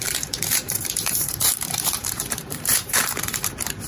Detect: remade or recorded remade